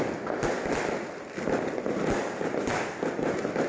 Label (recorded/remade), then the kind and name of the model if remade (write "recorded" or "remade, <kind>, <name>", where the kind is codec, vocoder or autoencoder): recorded